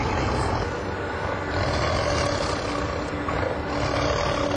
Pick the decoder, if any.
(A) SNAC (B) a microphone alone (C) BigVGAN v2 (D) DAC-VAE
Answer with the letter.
B